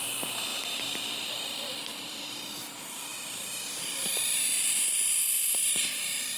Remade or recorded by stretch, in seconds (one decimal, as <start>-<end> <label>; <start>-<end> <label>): 0.0-3.1 remade; 3.1-3.8 recorded; 3.8-6.4 remade